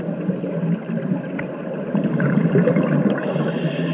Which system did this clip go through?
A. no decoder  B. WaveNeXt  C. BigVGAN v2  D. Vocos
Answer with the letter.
A